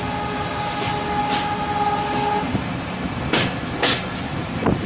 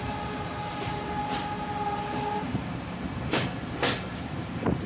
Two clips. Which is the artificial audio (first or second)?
second